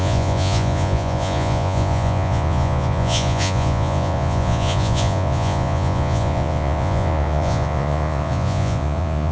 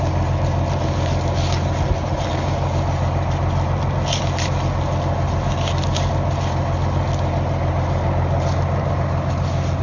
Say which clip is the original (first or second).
second